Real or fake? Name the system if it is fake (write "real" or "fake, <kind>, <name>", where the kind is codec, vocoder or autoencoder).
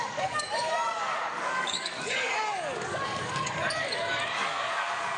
fake, codec, DAC